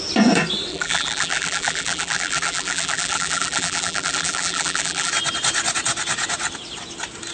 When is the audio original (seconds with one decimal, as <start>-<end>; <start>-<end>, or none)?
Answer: 0.0-0.7; 5.1-7.3